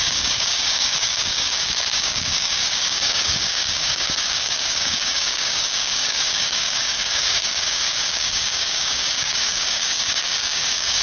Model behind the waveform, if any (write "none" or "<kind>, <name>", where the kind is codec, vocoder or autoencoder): codec, DAC